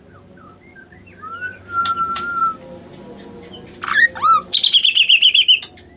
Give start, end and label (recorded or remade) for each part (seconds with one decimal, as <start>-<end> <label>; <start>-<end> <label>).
0.0-2.4 recorded; 2.4-6.0 remade